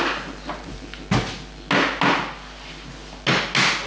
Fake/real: real